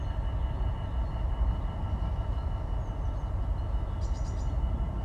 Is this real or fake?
real